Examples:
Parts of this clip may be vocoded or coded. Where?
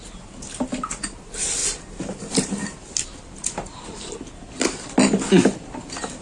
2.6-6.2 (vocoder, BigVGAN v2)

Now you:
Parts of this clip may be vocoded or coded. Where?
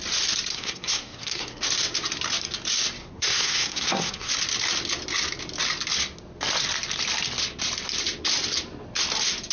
0.5-1.6 (codec, SNAC); 3.0-4.3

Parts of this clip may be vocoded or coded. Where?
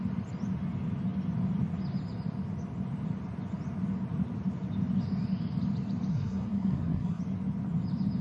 6.1-7.2 (codec, SNAC)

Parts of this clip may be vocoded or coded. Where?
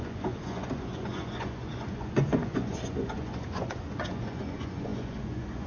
0.0-5.7 (vocoder, Vocos)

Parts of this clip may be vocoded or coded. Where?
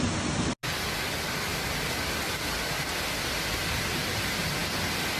none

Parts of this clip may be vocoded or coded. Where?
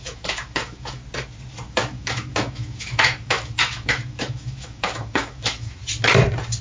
0.0-1.0 (autoencoder, DAC-VAE); 1.7-5.8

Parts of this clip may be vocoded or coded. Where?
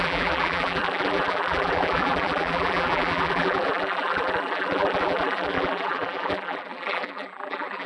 0.0-7.9 (vocoder, BigVGAN v2)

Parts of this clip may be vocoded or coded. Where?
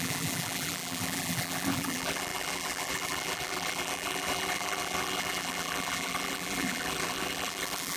0.0-8.0 (vocoder, BigVGAN v2)